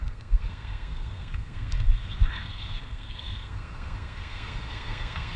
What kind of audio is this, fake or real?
fake